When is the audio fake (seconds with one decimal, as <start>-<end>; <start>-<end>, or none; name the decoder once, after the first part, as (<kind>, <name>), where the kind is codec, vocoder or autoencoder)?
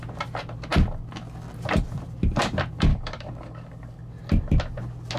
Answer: 2.9-4.1 (codec, DAC)